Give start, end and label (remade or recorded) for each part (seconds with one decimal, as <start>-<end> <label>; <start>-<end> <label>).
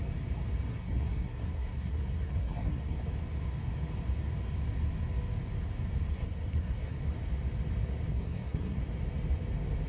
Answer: 0.0-0.7 recorded; 0.7-3.0 remade; 3.0-6.1 recorded; 6.1-7.0 remade; 7.0-8.1 recorded; 8.1-8.8 remade; 8.8-9.9 recorded